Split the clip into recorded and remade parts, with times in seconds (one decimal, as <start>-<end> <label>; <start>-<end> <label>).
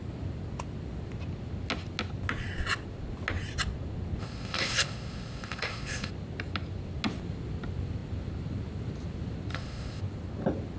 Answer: 0.0-4.2 recorded; 4.2-6.1 remade; 6.1-9.5 recorded; 9.5-10.0 remade; 10.0-10.8 recorded